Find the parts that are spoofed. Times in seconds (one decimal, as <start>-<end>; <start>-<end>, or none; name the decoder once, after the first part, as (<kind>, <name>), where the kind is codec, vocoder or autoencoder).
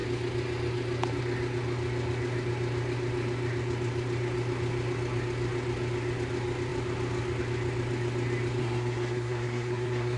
8.6-10.2 (codec, SNAC)